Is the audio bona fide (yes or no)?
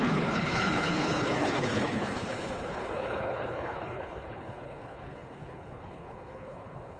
no